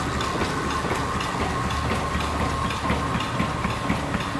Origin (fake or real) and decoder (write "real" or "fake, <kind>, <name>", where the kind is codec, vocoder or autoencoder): real